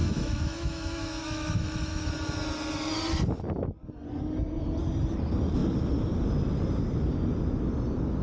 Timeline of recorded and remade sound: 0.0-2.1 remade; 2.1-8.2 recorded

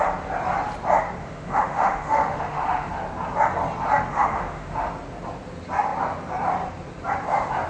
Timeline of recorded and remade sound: 0.0-1.2 recorded; 1.2-2.9 remade; 2.9-4.1 recorded; 4.1-4.9 remade; 4.9-7.7 recorded

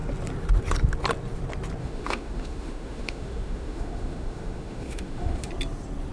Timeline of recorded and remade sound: 0.0-1.8 recorded; 1.8-5.5 remade; 5.5-6.1 recorded

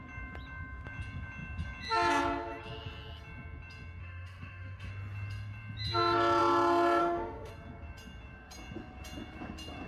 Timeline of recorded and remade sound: 0.0-4.0 recorded; 4.0-4.9 remade; 4.9-7.0 recorded; 7.0-7.5 remade; 7.5-9.9 recorded

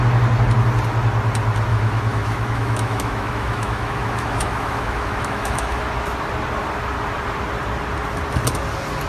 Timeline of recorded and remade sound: 0.0-1.7 recorded; 1.7-5.8 remade; 5.8-9.1 recorded